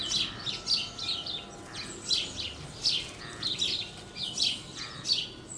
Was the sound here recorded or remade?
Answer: recorded